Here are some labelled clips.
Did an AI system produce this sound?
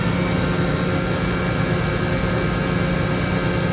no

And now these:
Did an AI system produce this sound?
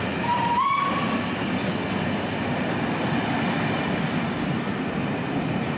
no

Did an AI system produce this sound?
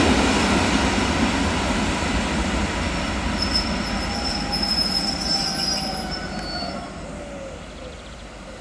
no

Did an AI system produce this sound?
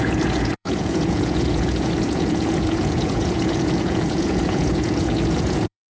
yes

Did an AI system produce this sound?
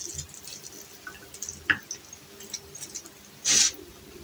no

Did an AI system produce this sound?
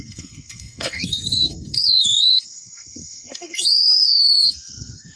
yes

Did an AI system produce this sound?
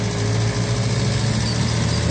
no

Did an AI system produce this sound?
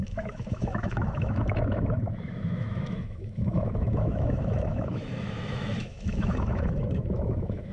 yes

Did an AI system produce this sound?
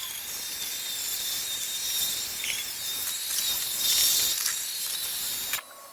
no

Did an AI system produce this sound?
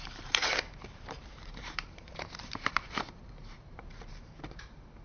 yes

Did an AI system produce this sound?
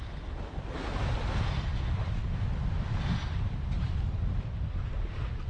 no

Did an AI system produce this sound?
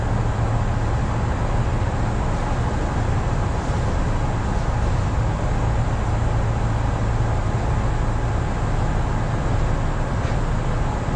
no